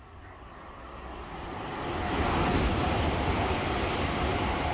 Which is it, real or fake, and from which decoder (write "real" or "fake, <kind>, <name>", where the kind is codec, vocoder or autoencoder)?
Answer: real